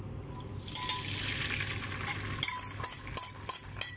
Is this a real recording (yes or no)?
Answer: yes